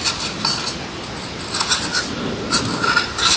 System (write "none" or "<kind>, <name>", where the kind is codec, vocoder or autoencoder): none